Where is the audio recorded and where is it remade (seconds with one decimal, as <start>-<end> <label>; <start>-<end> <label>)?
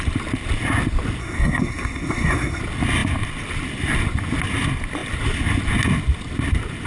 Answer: 0.0-1.2 recorded; 1.2-2.6 remade; 2.6-6.9 recorded